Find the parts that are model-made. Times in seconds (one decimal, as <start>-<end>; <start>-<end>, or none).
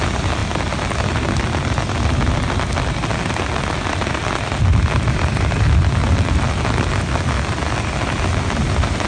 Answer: none